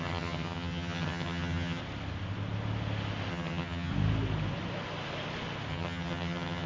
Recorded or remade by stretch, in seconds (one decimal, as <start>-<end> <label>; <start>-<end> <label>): 0.0-1.8 remade; 1.8-3.3 recorded; 3.3-3.9 remade; 3.9-5.7 recorded; 5.7-6.7 remade